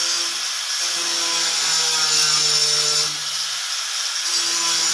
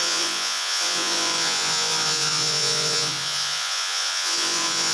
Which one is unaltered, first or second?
first